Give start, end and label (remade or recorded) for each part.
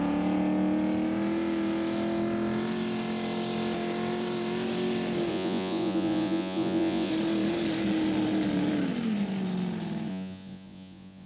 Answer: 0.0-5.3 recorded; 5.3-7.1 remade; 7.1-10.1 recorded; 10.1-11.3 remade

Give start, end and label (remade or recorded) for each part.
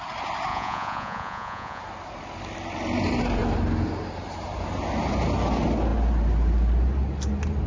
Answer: 0.0-0.5 recorded; 0.5-1.8 remade; 1.8-7.7 recorded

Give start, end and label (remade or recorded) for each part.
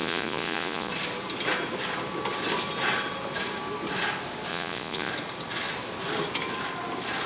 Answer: 0.0-0.9 remade; 0.9-4.5 recorded; 4.5-5.1 remade; 5.1-7.3 recorded